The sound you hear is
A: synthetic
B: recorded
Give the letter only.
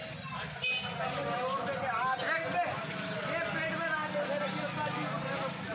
B